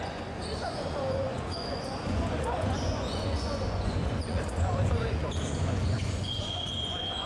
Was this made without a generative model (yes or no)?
no